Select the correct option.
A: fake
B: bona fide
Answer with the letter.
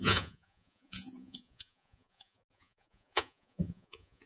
A